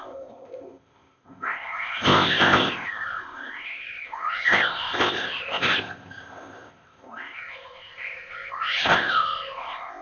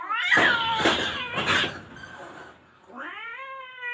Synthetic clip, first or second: first